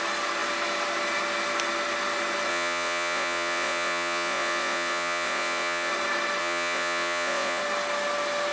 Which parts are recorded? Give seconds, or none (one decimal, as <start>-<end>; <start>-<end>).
0.0-2.5; 5.9-6.4; 7.6-8.5